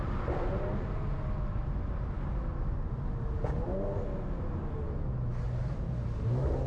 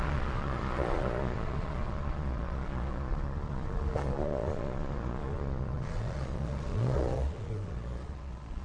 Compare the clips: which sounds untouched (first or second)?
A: first